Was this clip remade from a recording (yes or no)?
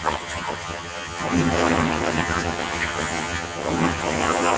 yes